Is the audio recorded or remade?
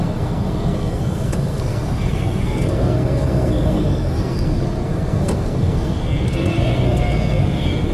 remade